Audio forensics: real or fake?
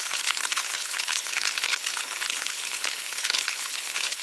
fake